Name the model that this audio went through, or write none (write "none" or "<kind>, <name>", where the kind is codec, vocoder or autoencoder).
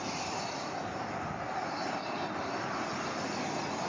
none